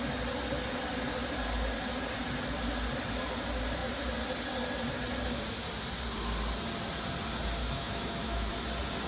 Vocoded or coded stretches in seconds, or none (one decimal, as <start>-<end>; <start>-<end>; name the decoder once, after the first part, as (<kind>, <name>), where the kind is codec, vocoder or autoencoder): 7.6-8.5 (autoencoder, DAC-VAE)